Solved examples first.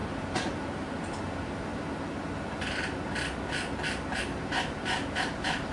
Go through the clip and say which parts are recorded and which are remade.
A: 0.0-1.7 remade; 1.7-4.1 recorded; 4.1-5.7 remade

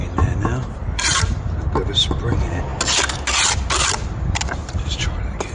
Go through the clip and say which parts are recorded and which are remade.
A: 0.0-0.8 recorded; 0.8-1.5 remade; 1.5-4.6 recorded; 4.6-5.5 remade